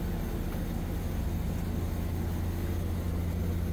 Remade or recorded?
recorded